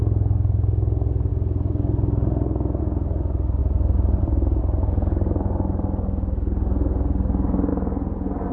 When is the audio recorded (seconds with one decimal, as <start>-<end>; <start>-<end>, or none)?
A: 0.0-3.6; 4.6-8.5